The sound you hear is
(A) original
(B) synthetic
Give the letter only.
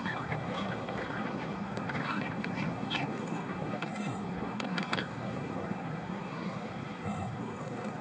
B